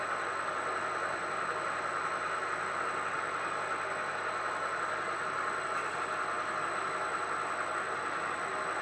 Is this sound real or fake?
real